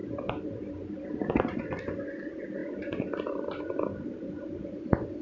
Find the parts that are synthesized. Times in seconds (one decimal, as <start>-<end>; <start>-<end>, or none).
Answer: none